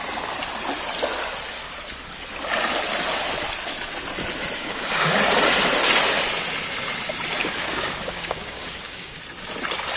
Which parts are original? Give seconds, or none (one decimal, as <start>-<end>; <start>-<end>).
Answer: 0.0-4.6; 5.2-7.4; 9.2-10.0

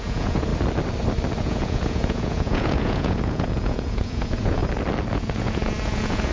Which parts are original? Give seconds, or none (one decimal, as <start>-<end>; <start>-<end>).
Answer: 0.5-1.4; 4.6-5.1

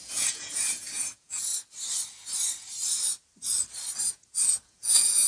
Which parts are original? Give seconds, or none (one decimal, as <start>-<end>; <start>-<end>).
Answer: 1.5-4.1

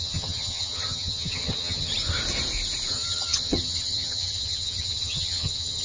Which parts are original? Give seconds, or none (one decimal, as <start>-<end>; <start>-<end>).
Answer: 1.9-2.9